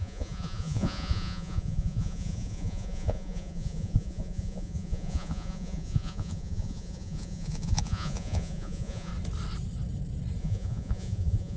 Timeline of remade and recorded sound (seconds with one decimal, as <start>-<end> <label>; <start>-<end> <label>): 0.0-9.1 remade; 9.1-10.4 recorded; 10.4-11.6 remade